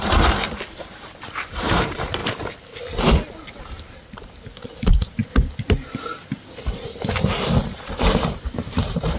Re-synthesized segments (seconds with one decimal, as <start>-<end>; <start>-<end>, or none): 0.0-2.2; 3.6-5.2; 7.6-9.2